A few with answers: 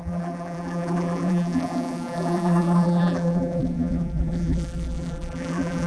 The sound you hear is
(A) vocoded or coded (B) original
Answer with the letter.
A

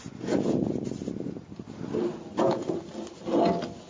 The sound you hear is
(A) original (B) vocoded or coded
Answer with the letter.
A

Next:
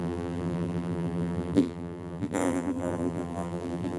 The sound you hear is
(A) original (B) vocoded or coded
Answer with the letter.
B